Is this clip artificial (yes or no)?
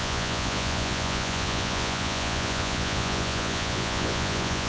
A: yes